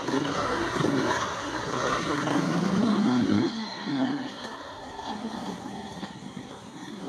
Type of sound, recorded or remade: remade